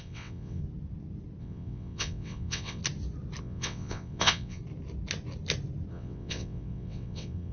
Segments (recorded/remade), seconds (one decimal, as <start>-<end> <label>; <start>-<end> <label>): 0.0-0.6 remade; 0.6-1.4 recorded; 1.4-2.8 remade; 2.8-3.4 recorded; 3.4-4.6 remade; 4.6-5.9 recorded; 5.9-7.5 remade